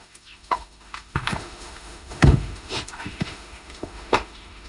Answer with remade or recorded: remade